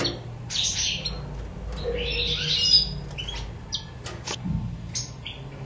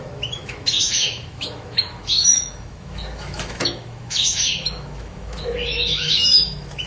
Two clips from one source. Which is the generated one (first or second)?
second